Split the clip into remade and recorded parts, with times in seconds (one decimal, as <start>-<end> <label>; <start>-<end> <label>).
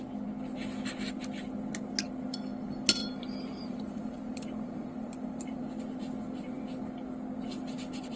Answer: 0.0-3.0 recorded; 3.0-5.6 remade; 5.6-8.2 recorded